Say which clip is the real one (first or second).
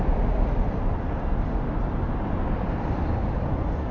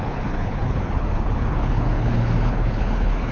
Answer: first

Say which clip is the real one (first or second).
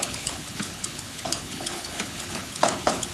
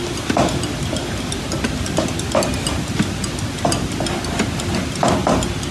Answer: second